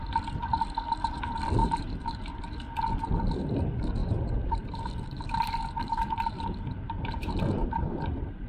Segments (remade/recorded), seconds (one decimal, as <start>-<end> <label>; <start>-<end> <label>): 0.0-1.6 recorded; 1.6-2.4 remade; 2.4-4.0 recorded; 4.0-7.4 remade; 7.4-8.5 recorded